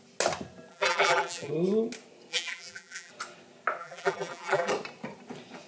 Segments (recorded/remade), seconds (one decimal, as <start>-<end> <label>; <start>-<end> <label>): 0.0-0.7 recorded; 0.7-1.5 remade; 1.5-2.3 recorded; 2.3-3.1 remade; 3.1-3.8 recorded; 3.8-4.7 remade; 4.7-5.7 recorded

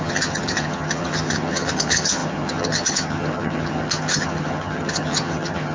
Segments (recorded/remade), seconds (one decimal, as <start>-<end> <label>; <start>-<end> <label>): 0.0-5.7 remade

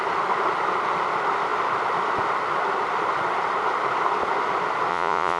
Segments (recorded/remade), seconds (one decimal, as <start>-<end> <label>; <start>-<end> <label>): 0.0-4.9 recorded; 4.9-5.4 remade

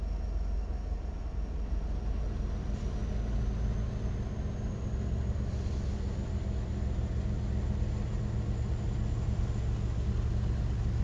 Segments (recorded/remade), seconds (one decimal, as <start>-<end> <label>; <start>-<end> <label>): 0.0-11.0 recorded